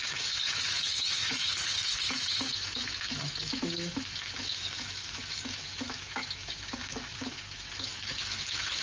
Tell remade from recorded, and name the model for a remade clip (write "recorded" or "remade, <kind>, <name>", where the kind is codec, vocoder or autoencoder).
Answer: remade, autoencoder, DAC-VAE